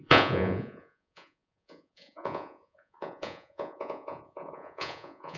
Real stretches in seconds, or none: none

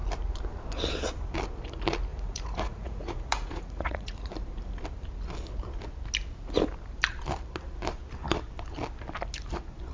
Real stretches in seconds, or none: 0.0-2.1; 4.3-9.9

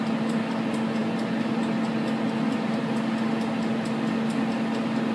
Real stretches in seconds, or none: 0.0-5.1

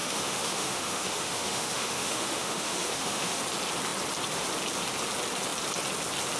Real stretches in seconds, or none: 3.4-6.4

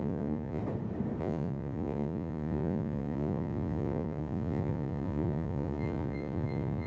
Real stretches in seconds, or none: 0.6-1.2